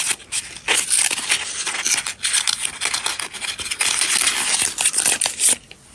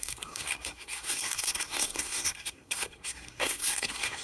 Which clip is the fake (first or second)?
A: second